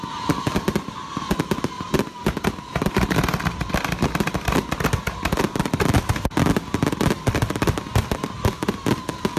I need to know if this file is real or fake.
real